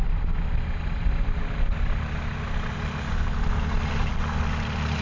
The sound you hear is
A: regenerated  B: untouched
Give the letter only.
B